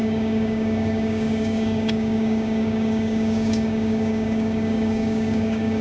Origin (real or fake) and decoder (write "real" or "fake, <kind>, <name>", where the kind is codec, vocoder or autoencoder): fake, codec, DAC